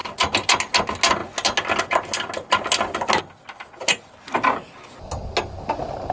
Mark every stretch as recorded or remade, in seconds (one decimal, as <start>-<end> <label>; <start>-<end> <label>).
0.0-6.1 recorded